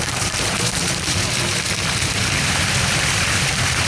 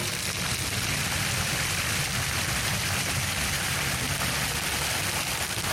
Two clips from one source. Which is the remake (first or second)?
first